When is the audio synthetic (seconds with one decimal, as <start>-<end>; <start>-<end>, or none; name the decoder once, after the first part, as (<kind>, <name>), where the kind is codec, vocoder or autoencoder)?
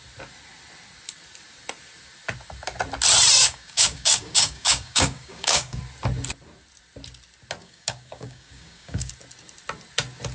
3.4-5.8 (codec, DAC); 7.6-9.1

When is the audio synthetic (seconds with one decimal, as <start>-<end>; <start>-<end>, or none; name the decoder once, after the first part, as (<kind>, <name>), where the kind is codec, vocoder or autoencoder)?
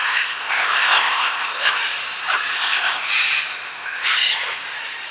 0.0-1.8 (codec, ZipCodec); 2.5-3.1; 3.5-4.6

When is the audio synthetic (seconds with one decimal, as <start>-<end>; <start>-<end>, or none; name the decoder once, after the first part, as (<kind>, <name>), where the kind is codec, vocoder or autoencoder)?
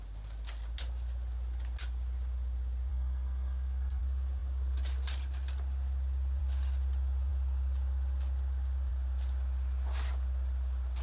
2.9-4.0 (codec, SNAC)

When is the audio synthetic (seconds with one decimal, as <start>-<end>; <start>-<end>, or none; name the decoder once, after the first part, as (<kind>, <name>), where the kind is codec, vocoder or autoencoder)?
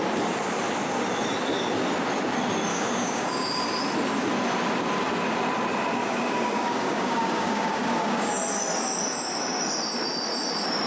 2.7-3.6 (codec, DAC); 6.0-8.3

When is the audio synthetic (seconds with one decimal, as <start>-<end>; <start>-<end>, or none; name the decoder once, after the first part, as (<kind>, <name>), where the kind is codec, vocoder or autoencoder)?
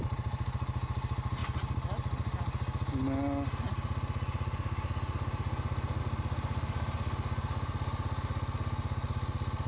none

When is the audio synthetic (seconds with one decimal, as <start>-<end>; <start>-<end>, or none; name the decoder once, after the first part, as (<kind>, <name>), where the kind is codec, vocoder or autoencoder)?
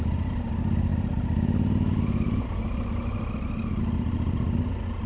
none